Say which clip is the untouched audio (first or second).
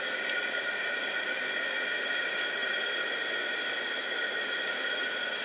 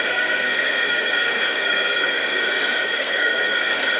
first